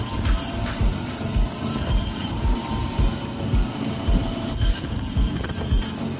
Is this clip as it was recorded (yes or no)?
no